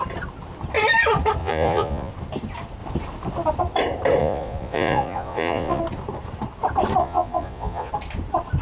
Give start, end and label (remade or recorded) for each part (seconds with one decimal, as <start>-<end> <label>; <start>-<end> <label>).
0.0-1.4 recorded; 1.4-2.1 remade; 2.1-4.2 recorded; 4.2-5.8 remade; 5.8-7.0 recorded; 7.0-7.9 remade; 7.9-8.6 recorded